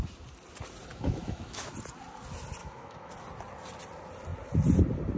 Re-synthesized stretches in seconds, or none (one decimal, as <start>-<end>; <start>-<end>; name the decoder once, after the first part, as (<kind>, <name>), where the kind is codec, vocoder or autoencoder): 0.9-1.7 (autoencoder, DAC-VAE); 2.6-3.1